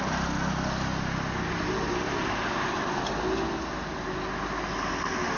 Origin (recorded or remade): recorded